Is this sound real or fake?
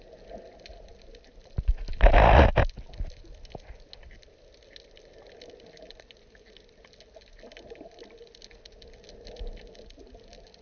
real